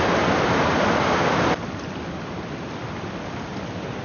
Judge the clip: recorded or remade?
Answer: remade